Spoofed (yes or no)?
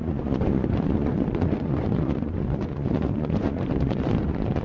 yes